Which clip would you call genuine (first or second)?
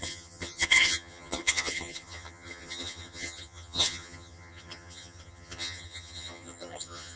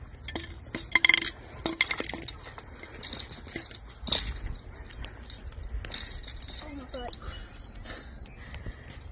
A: second